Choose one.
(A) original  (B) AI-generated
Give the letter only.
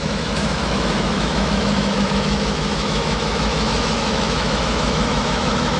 B